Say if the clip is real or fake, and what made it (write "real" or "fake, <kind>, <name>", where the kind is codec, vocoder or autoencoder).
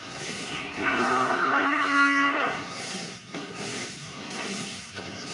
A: fake, codec, SNAC